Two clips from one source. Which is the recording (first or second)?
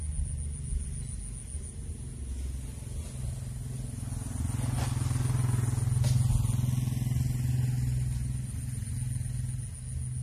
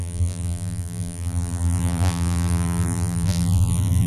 first